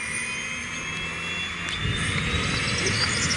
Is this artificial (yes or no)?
no